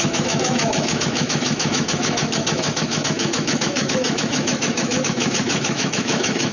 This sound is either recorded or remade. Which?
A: remade